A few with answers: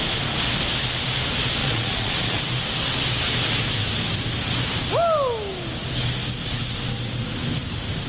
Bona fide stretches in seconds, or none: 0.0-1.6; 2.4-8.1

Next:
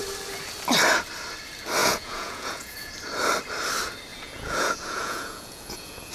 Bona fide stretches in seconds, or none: 0.0-1.8; 2.9-4.1

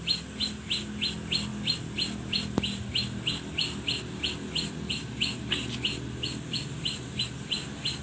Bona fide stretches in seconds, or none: 0.0-8.0